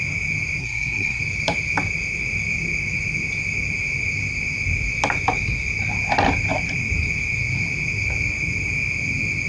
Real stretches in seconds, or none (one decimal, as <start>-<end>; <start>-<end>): 0.0-0.6; 1.2-9.5